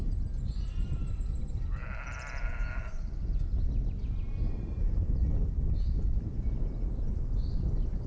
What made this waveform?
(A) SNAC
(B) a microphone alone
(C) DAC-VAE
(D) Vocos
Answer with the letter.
B